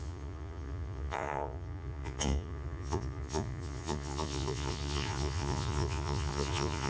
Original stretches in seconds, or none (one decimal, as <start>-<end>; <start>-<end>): none